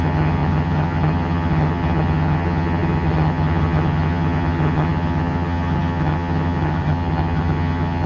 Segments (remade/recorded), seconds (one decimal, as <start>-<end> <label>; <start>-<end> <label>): 0.0-8.1 remade